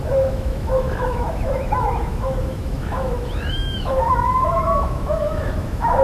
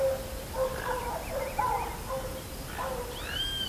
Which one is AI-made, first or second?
first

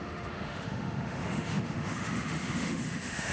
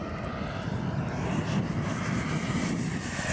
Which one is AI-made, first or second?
first